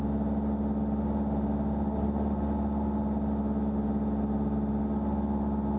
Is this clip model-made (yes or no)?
no